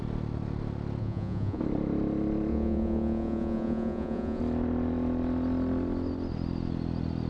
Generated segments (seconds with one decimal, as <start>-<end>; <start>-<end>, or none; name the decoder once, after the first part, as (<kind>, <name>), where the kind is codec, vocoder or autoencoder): 1.0-1.6 (vocoder, Vocos); 2.5-4.4